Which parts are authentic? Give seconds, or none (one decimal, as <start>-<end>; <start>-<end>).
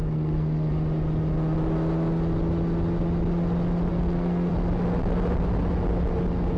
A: 0.7-3.9; 4.5-6.6